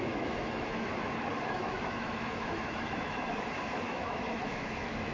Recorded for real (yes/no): no